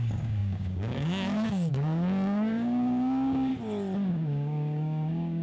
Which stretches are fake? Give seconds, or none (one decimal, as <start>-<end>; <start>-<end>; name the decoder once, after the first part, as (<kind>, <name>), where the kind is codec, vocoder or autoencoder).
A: 0.0-3.5 (codec, DAC); 4.1-5.4